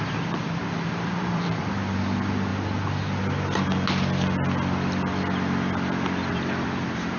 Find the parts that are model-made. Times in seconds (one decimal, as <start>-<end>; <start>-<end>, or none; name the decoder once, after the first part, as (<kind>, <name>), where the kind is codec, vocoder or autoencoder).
0.0-2.5 (vocoder, BigVGAN v2); 6.3-7.2

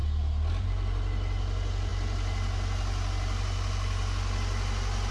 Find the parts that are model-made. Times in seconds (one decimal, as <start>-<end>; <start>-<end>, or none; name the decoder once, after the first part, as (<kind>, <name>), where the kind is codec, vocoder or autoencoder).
none

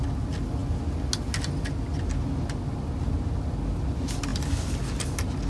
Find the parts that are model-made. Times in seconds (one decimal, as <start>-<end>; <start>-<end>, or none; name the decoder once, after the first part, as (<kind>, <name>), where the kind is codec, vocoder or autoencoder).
none

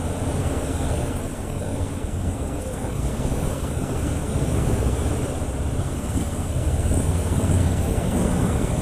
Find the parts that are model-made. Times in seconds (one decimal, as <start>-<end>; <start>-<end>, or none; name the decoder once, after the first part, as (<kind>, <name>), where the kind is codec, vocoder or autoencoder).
0.4-5.1 (codec, SNAC); 5.8-8.8

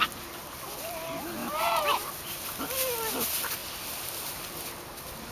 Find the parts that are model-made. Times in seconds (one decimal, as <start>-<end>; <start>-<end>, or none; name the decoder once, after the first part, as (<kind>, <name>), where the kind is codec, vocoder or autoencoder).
1.4-2.1 (vocoder, BigVGAN v2)